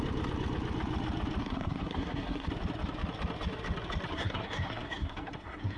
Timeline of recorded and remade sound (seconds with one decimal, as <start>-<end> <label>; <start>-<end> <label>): 0.0-1.4 recorded; 1.4-2.5 remade; 2.5-4.1 recorded; 4.1-5.8 remade